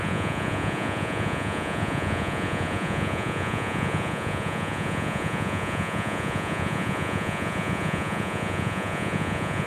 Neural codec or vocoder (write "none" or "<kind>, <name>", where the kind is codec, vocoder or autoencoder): vocoder, Vocos